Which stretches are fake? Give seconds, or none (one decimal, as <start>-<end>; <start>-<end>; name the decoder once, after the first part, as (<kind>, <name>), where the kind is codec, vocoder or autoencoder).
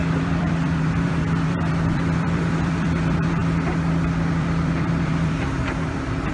0.0-3.4 (vocoder, BigVGAN v2); 4.4-6.3